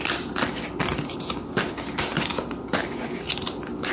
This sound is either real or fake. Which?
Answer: real